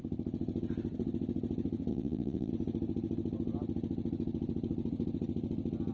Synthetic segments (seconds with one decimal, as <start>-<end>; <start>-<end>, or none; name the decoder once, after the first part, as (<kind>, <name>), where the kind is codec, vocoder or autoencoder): 1.9-2.5 (vocoder, Vocos)